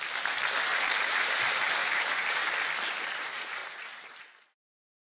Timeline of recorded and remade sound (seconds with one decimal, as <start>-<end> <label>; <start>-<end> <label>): 0.0-0.7 recorded; 0.7-1.3 remade; 1.3-1.8 recorded; 1.8-2.5 remade; 2.5-3.6 recorded; 3.6-5.0 remade